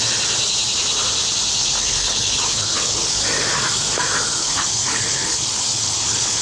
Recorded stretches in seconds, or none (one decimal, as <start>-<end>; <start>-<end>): 0.0-1.6; 3.2-4.4